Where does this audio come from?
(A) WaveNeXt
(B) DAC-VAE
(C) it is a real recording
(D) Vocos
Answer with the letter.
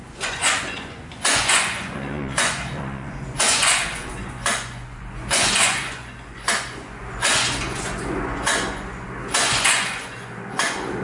D